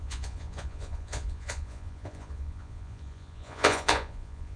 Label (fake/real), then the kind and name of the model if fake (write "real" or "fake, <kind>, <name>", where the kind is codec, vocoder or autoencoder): fake, vocoder, Vocos